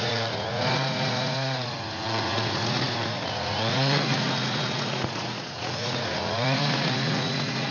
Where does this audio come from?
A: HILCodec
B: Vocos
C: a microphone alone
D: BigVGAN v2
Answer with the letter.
B